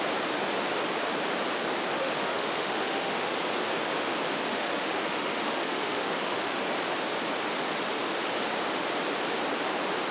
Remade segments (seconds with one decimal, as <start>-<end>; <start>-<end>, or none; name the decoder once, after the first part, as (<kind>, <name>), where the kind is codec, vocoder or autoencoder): 1.9-3.4 (autoencoder, DAC-VAE); 4.5-6.6